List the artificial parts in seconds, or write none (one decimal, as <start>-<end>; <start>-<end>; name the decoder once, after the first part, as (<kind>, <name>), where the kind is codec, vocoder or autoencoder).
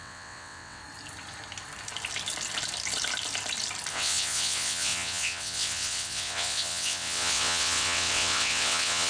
0.0-0.8 (vocoder, WaveNeXt); 3.9-9.1